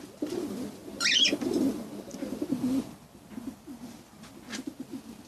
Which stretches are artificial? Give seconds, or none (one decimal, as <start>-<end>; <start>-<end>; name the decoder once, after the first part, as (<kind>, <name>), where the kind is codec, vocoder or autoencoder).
0.8-1.6 (vocoder, BigVGAN v2)